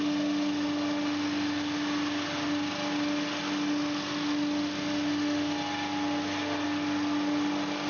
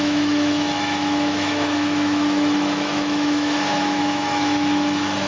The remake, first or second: second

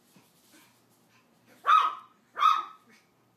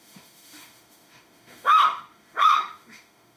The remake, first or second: second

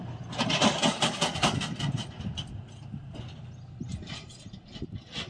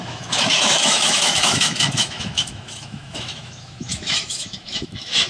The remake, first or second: second